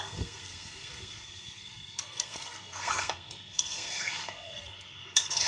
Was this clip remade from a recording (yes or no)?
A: yes